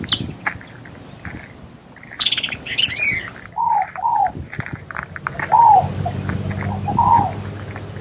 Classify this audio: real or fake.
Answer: real